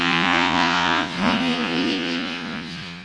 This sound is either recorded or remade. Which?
remade